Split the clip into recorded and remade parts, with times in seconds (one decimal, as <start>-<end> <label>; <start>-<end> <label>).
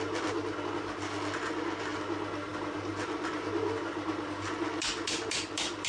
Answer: 0.0-5.9 recorded